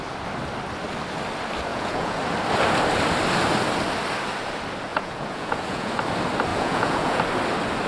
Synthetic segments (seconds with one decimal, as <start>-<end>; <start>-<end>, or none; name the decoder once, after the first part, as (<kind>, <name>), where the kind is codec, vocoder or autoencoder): 1.7-2.2 (vocoder, Vocos); 4.9-5.9; 6.5-7.2